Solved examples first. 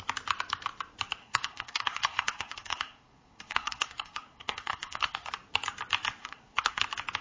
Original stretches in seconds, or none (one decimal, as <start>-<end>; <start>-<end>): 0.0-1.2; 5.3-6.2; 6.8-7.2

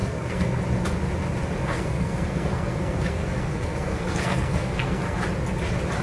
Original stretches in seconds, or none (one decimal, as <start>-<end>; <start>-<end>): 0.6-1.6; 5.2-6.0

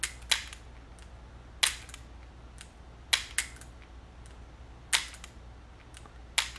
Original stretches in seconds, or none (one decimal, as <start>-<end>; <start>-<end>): 0.0-6.6

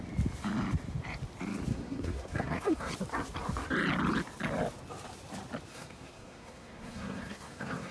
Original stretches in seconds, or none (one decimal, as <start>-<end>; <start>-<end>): 0.0-1.7; 2.9-5.7

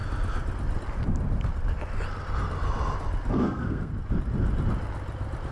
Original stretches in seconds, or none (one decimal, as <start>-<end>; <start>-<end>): 0.0-3.3; 3.9-5.5

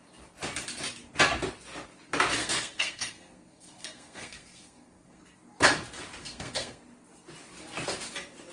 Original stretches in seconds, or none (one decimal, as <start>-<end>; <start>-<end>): 0.0-2.4; 5.2-6.2; 6.8-8.5

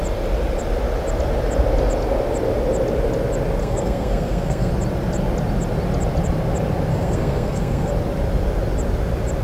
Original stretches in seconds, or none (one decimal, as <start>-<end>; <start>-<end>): 0.0-3.6; 4.7-6.9; 7.9-9.4

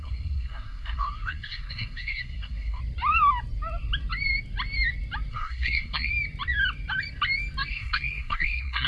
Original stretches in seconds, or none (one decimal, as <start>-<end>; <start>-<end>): 2.8-5.3; 6.1-7.7